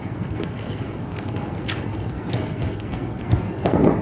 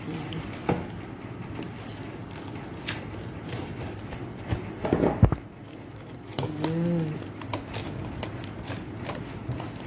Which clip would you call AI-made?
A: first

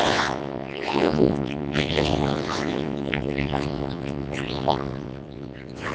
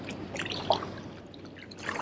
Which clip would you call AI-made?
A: first